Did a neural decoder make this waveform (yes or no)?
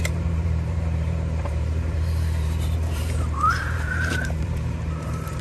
yes